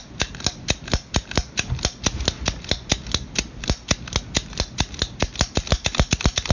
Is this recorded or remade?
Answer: recorded